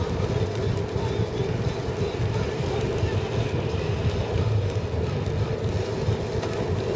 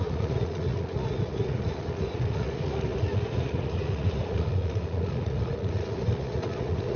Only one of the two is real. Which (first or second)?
first